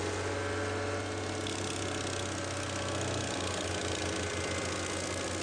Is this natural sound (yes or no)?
yes